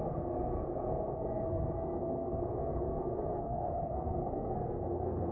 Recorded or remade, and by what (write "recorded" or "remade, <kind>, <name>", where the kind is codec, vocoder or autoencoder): remade, codec, SNAC